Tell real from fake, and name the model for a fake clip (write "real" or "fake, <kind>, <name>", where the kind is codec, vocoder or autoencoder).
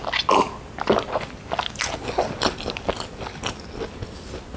real